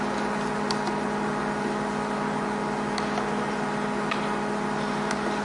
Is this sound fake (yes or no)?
no